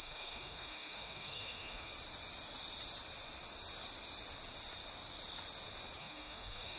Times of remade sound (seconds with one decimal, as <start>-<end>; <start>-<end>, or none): 0.0-1.9; 6.0-6.8